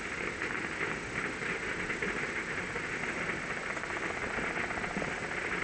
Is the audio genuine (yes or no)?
yes